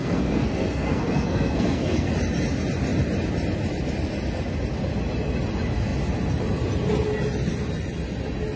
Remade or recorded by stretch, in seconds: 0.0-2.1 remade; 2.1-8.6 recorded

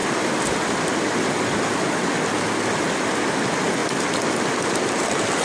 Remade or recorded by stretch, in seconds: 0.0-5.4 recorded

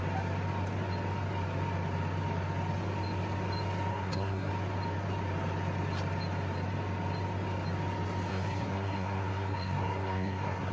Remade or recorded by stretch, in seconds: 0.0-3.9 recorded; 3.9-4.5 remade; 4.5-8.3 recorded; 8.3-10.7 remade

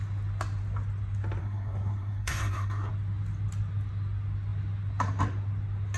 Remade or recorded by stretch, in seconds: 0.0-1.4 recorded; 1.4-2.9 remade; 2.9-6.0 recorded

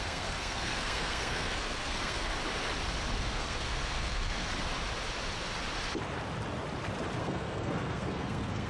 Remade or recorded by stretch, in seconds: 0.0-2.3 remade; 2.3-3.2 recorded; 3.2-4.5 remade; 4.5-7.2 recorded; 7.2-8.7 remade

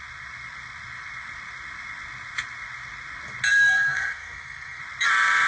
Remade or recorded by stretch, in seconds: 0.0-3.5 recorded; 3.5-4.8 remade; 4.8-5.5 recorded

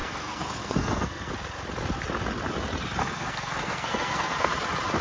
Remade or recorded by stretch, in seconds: 0.0-1.3 remade; 1.3-3.0 recorded; 3.0-4.5 remade; 4.5-5.0 recorded